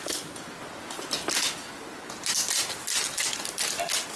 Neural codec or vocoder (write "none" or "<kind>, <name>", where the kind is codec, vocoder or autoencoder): none